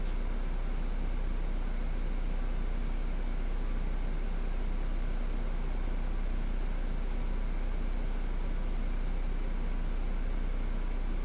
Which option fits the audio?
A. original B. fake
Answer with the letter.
A